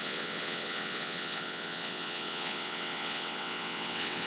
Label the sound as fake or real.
fake